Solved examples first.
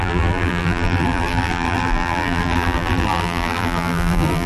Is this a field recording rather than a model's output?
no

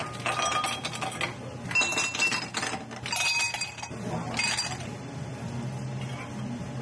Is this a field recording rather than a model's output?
yes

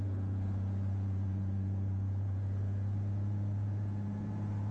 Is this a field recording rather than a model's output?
no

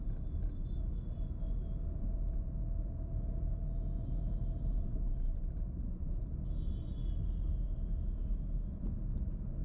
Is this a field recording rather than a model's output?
yes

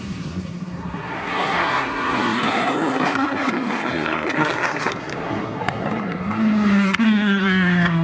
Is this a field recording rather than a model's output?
no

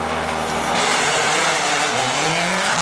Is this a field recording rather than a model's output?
yes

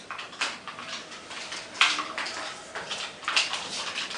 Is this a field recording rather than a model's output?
no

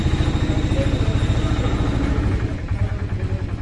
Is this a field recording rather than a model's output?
yes